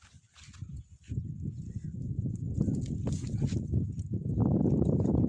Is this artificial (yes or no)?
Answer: no